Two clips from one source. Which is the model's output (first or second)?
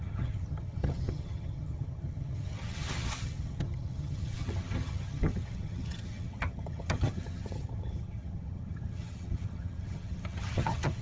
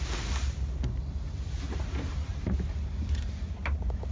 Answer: first